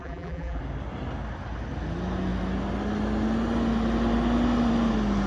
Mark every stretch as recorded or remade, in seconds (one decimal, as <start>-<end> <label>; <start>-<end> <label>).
0.0-0.6 remade; 0.6-5.3 recorded